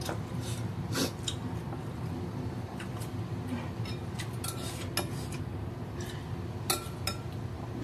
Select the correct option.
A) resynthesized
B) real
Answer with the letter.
B